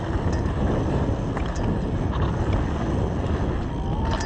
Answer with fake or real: real